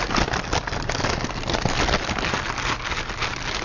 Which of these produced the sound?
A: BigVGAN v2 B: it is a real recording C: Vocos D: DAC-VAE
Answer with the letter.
B